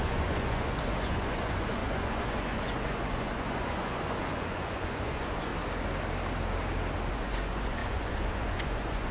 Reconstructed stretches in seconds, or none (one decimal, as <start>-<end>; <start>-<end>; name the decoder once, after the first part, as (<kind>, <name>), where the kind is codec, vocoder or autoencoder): 0.0-5.5 (vocoder, Vocos); 7.1-9.1